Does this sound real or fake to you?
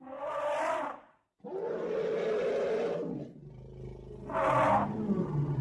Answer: real